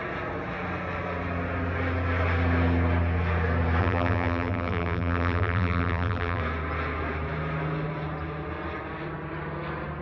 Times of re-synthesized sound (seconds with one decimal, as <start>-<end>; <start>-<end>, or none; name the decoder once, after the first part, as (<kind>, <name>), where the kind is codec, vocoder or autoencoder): 3.8-6.4 (vocoder, BigVGAN v2)